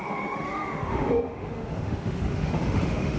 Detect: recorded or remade remade